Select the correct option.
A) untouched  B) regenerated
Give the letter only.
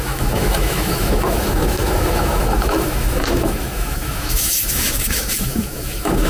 B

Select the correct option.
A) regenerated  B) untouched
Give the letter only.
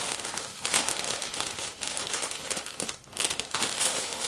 A